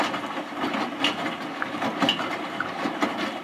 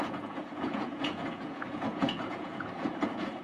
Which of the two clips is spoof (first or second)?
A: second